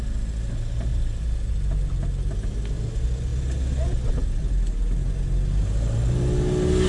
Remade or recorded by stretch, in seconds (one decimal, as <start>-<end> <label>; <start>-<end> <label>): 0.0-0.9 recorded; 0.9-1.9 remade; 1.9-6.9 recorded